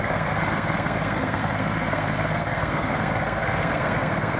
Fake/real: fake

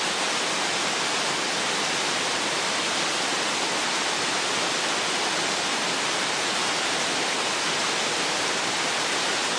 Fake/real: real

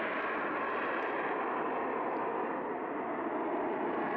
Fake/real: real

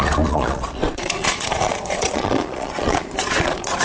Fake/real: fake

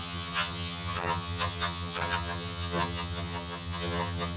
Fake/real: fake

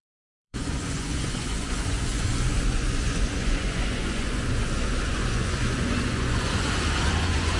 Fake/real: fake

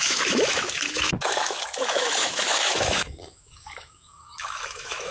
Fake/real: fake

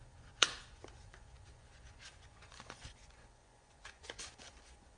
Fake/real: fake